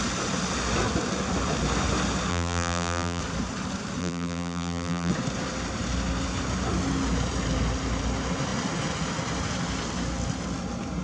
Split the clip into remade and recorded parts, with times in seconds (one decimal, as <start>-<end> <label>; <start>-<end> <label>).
0.0-2.3 recorded; 2.3-3.2 remade; 3.2-4.0 recorded; 4.0-5.1 remade; 5.1-11.0 recorded